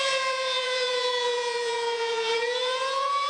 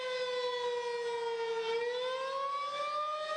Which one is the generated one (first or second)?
first